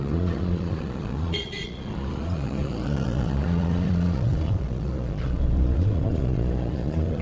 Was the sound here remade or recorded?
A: remade